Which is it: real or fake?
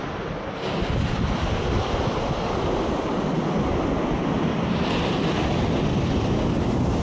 real